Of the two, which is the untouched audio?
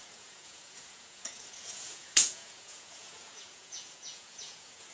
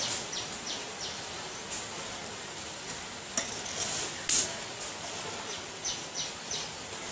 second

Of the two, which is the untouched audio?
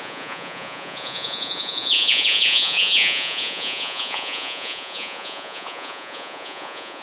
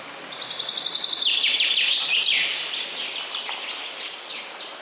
second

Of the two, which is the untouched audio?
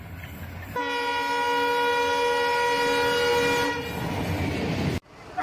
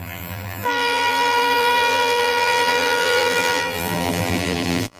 first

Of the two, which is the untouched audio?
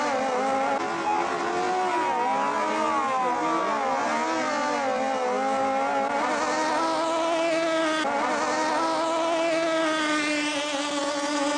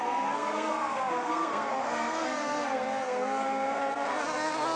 first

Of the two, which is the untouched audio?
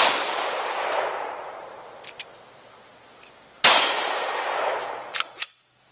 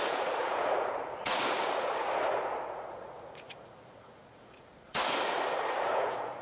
first